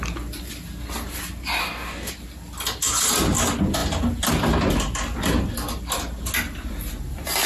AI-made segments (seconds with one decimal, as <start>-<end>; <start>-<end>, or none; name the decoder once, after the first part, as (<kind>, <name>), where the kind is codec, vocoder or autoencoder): 1.6-2.1 (codec, DAC)

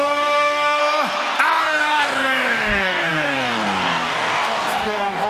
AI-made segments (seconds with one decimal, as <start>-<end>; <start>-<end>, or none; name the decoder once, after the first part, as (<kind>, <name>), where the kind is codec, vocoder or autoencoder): 0.0-0.8 (codec, DAC); 1.6-5.3

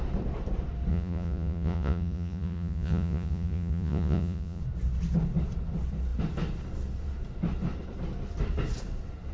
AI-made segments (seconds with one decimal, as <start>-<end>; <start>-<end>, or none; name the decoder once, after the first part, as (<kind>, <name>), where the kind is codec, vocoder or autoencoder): 0.9-4.6 (vocoder, Vocos)

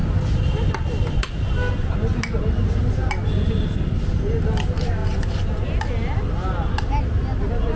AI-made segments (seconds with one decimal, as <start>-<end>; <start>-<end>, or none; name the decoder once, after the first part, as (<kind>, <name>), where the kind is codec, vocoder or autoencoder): none

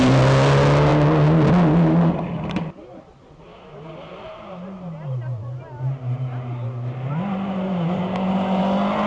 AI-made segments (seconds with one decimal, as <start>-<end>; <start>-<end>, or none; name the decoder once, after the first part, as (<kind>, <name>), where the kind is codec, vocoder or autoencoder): none

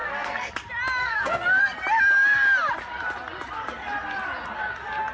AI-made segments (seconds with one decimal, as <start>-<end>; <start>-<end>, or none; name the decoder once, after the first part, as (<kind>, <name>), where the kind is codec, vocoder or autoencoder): 0.0-0.5 (codec, SNAC); 1.0-1.6

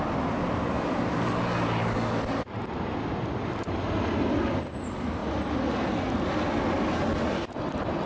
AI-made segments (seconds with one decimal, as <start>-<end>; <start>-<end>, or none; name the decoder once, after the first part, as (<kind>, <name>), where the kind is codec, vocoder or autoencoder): none

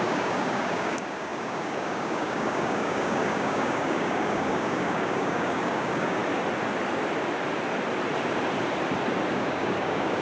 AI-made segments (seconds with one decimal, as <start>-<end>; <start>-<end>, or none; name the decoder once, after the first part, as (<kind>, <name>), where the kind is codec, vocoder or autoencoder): 0.0-6.2 (codec, DAC); 9.3-10.2